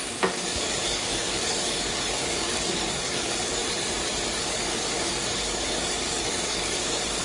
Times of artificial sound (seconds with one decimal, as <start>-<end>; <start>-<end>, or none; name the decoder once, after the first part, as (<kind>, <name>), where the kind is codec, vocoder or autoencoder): 0.0-3.6 (codec, DAC); 4.4-7.2

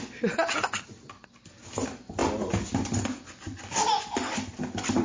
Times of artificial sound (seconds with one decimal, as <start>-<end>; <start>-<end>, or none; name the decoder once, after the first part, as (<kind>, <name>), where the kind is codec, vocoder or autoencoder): none

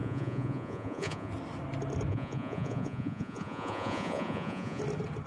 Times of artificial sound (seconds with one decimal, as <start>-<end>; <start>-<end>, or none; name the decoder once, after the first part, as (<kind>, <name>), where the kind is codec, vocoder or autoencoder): 0.0-1.3 (vocoder, Vocos); 2.1-4.8

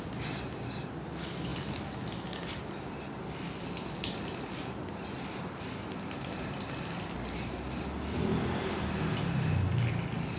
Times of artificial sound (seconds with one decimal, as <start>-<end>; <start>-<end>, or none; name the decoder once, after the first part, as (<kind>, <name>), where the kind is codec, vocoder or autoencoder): none

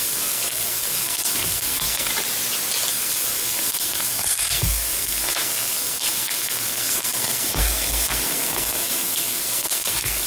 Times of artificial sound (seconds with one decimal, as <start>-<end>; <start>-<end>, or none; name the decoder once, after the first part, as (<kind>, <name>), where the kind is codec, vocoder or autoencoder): 0.0-2.1 (codec, SNAC); 2.9-10.3

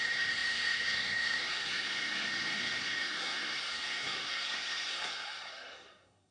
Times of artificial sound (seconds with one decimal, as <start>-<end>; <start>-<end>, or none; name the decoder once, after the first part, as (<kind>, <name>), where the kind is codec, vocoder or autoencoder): 0.0-6.3 (codec, SNAC)